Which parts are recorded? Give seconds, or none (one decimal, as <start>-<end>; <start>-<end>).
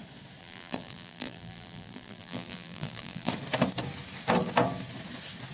0.0-0.4; 3.3-5.5